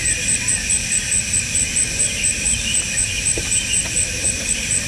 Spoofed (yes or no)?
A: yes